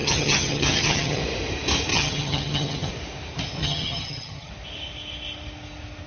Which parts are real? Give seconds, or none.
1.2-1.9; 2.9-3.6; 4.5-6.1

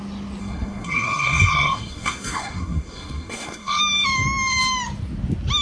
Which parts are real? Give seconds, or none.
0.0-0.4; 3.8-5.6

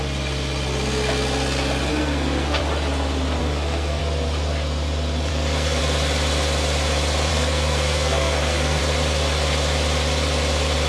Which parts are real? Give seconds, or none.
0.0-1.9; 2.6-3.4; 4.0-5.3; 5.8-7.3; 8.8-10.9

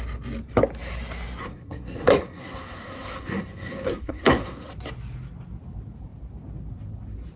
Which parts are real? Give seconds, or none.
0.0-1.4; 4.7-7.4